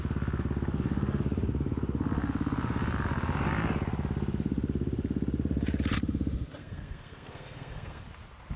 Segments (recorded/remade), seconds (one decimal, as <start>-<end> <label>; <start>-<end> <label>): 0.0-6.6 recorded; 6.6-8.0 remade; 8.0-8.6 recorded